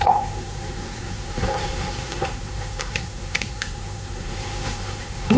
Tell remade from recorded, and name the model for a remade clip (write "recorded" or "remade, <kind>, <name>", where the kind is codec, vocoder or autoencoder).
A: remade, codec, SNAC